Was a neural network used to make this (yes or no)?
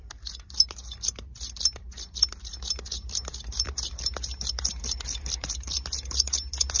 no